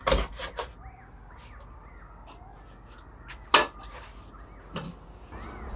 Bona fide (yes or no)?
yes